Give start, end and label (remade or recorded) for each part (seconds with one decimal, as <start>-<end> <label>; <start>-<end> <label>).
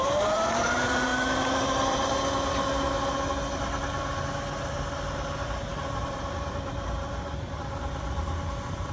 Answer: 0.0-1.1 remade; 1.1-4.6 recorded; 4.6-8.9 remade